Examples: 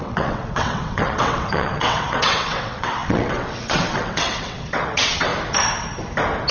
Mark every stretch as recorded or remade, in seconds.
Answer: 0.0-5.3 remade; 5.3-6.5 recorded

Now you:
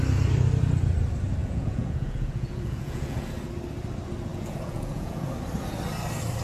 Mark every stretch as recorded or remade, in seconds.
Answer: 0.0-1.4 recorded; 1.4-3.2 remade; 3.2-4.3 recorded; 4.3-5.3 remade; 5.3-6.4 recorded

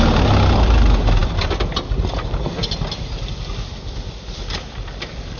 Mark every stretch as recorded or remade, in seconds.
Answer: 0.0-5.4 recorded

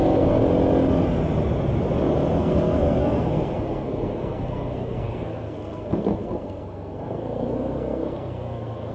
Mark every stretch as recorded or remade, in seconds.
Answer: 0.0-0.4 remade; 0.4-2.4 recorded; 2.4-8.9 remade

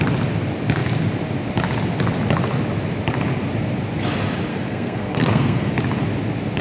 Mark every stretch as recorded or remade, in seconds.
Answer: 0.0-4.5 recorded; 4.5-5.7 remade; 5.7-6.6 recorded

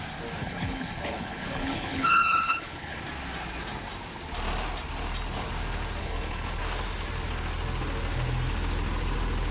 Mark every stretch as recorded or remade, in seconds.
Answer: 0.0-0.4 recorded; 0.4-3.0 remade; 3.0-6.0 recorded; 6.0-6.6 remade; 6.6-9.5 recorded